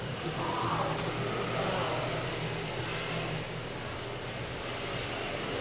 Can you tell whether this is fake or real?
real